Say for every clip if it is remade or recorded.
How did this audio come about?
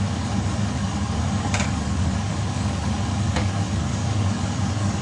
remade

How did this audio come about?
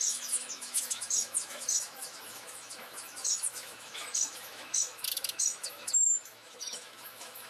remade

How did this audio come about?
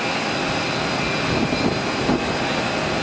recorded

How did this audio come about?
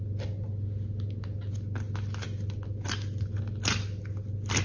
recorded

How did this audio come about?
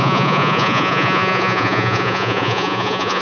remade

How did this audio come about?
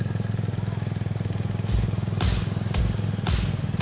recorded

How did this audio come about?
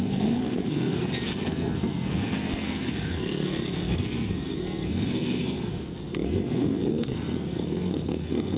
remade